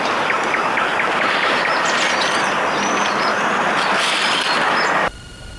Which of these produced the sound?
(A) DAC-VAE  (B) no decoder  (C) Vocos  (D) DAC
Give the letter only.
B